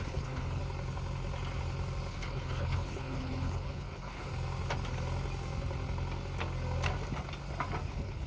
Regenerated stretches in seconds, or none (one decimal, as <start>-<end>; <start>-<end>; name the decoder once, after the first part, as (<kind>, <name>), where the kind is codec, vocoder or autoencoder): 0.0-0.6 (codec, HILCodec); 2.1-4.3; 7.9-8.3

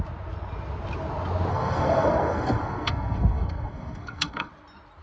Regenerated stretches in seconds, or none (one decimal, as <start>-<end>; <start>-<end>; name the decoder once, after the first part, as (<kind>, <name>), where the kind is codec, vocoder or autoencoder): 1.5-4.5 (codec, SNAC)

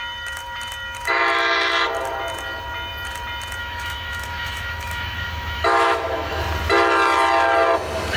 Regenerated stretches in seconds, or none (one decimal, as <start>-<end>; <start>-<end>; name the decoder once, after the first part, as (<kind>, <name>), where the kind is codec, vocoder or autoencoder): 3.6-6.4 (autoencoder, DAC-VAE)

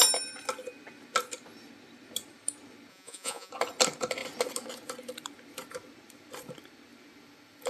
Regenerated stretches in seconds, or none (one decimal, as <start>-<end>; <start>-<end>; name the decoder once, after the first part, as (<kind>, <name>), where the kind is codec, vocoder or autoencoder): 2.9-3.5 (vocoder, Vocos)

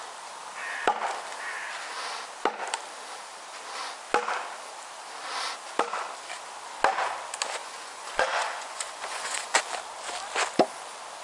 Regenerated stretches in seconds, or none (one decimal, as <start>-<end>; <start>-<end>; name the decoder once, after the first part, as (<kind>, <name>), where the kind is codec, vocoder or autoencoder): 7.6-9.6 (vocoder, Vocos)

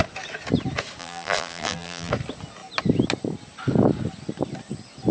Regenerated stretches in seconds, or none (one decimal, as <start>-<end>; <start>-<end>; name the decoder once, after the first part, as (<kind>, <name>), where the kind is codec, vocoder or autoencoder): 1.0-2.1 (vocoder, BigVGAN v2)